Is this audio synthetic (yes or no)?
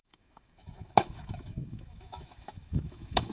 yes